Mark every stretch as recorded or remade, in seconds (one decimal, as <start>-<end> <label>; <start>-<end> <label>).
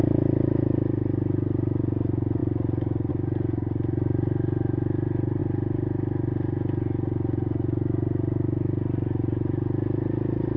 0.0-10.6 recorded